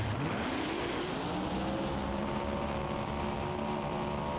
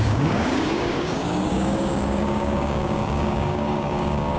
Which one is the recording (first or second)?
first